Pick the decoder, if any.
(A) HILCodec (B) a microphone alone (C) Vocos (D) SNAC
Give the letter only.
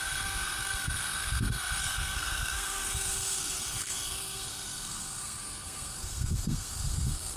D